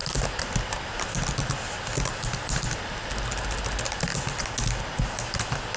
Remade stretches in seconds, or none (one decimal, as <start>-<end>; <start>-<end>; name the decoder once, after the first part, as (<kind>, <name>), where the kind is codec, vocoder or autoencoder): none

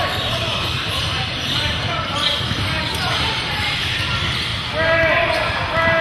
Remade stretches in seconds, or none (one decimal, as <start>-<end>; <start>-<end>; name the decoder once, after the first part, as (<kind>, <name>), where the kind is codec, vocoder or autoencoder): 0.5-4.1 (vocoder, BigVGAN v2)

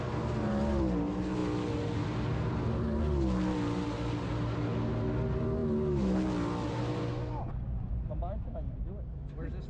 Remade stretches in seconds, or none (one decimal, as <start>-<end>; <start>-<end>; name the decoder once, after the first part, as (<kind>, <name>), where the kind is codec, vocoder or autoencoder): none

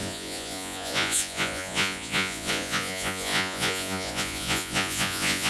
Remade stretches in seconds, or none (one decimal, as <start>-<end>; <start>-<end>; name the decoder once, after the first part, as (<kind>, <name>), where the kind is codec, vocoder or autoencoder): 0.0-5.5 (vocoder, Vocos)

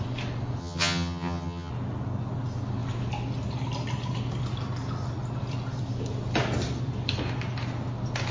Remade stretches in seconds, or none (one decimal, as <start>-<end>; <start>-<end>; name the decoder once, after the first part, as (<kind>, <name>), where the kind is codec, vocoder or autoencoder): 0.6-1.7 (vocoder, HiFi-GAN)

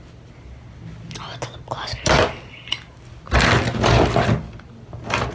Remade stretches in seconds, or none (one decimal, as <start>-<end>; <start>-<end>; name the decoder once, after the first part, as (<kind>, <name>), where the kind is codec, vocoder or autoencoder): none